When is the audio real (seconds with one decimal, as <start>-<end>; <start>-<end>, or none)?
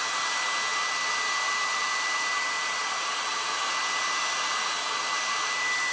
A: 0.0-5.9